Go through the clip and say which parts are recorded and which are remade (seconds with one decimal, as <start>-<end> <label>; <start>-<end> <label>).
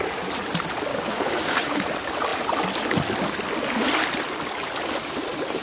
0.0-0.9 recorded; 0.9-1.8 remade; 1.8-5.6 recorded